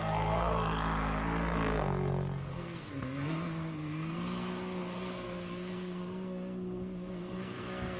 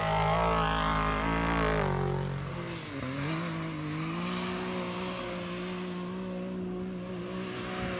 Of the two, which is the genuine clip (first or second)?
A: second